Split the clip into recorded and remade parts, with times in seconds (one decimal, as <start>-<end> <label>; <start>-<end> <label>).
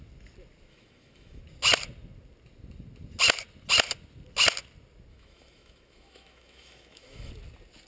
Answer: 0.0-0.7 recorded; 0.7-1.4 remade; 1.4-5.1 recorded; 5.1-7.3 remade; 7.3-7.9 recorded